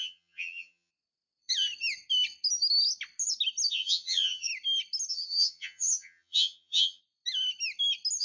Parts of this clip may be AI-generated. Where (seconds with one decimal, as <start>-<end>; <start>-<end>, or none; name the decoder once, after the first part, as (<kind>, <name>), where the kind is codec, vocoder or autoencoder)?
0.0-0.9 (vocoder, HiFi-GAN); 3.7-4.5; 5.1-7.0